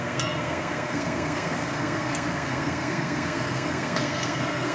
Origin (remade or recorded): remade